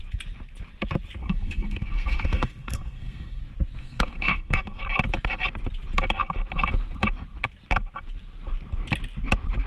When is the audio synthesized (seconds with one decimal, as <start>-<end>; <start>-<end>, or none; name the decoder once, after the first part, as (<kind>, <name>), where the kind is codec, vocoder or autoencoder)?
1.2-3.4 (codec, SNAC); 3.8-4.8